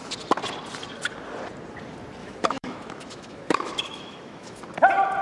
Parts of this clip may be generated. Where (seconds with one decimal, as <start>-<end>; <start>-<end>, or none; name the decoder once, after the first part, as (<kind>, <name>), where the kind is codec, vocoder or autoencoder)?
2.2-4.6 (autoencoder, DAC-VAE)